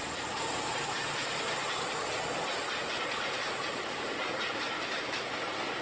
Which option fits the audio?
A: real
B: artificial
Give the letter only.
A